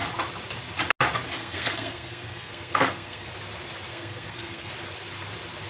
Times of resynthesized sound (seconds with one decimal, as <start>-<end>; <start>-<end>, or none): 1.4-3.3; 3.9-4.7